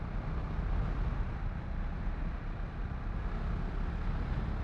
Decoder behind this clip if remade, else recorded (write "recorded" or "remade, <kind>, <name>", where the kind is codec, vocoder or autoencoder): recorded